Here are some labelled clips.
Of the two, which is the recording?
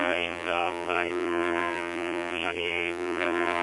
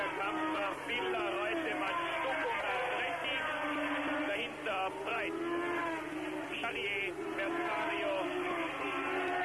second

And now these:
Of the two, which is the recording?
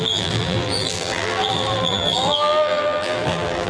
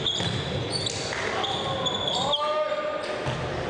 second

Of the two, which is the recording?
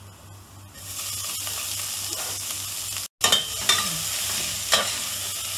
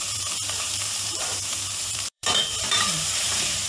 first